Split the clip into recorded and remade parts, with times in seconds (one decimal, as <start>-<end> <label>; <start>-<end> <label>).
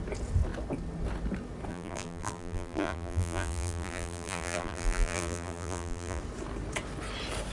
0.0-1.7 recorded; 1.7-6.2 remade; 6.2-7.5 recorded